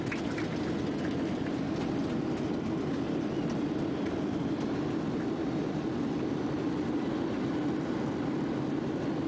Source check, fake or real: real